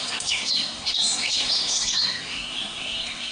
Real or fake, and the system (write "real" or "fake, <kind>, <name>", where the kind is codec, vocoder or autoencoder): fake, codec, SNAC